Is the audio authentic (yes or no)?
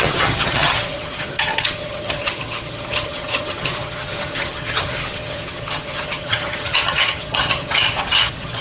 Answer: no